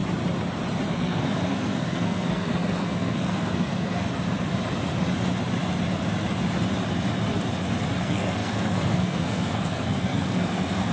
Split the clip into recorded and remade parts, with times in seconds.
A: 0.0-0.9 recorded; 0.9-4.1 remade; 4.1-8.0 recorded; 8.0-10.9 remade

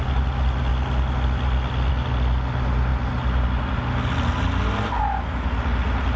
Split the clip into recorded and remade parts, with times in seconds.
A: 0.0-6.2 recorded